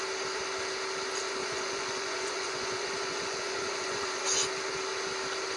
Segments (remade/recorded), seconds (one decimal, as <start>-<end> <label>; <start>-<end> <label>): 0.0-1.4 recorded; 1.4-4.2 remade; 4.2-5.6 recorded